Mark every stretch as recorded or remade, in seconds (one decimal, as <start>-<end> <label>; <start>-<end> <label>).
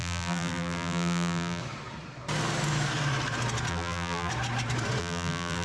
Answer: 0.0-1.6 remade; 1.6-3.7 recorded; 3.7-4.3 remade; 4.3-5.0 recorded; 5.0-5.6 remade